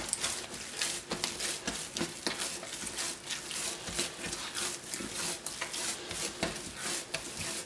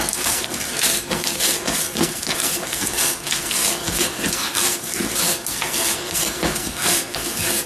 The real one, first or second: first